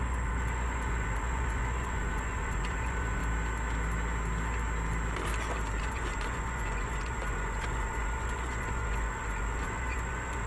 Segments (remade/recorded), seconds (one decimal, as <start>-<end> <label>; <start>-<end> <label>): 0.0-3.2 remade; 3.2-5.8 recorded; 5.8-10.5 remade